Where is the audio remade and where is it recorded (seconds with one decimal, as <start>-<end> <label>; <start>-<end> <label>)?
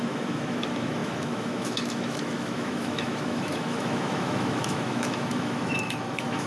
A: 0.0-6.5 remade